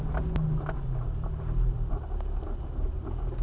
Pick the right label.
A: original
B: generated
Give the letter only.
A